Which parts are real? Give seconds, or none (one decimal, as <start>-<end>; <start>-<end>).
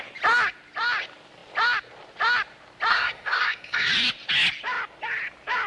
0.0-2.9; 3.9-5.7